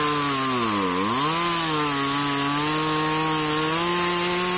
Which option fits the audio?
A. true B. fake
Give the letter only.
A